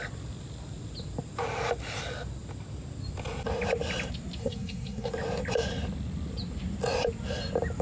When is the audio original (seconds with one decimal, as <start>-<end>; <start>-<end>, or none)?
0.0-4.4; 5.1-7.8